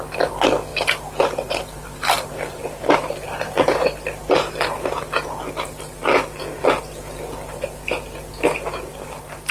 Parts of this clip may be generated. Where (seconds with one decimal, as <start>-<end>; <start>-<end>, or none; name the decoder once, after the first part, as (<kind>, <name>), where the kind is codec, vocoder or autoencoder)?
0.7-4.5 (vocoder, BigVGAN v2); 8.5-9.5